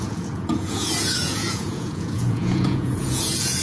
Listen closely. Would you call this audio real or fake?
fake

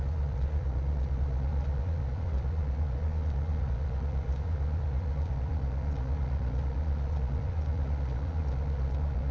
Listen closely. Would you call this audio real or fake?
fake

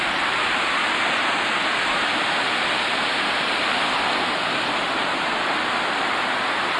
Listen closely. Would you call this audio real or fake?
real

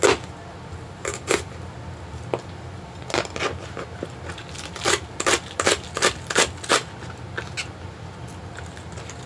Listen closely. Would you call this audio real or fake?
real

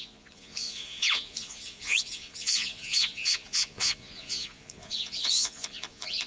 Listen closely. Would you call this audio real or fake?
fake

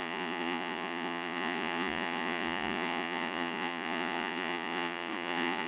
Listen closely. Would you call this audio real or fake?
fake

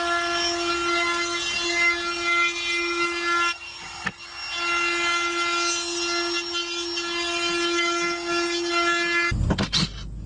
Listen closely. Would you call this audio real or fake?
real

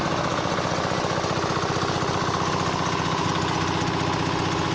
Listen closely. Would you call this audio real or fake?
real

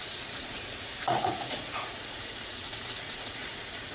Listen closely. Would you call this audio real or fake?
fake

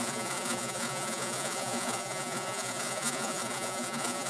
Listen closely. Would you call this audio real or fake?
fake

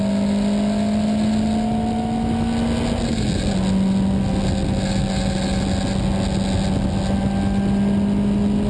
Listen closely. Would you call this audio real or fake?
real